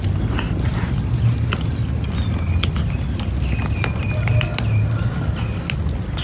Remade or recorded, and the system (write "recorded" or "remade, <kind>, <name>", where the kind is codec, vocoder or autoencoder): recorded